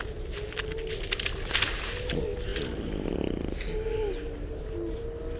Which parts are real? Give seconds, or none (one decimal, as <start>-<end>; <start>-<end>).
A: 0.0-5.4